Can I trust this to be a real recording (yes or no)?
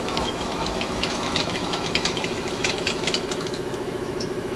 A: no